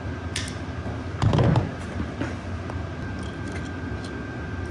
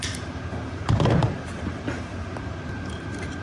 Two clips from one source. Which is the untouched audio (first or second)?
first